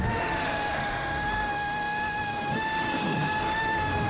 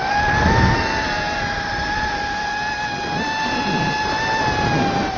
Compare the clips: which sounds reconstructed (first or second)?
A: first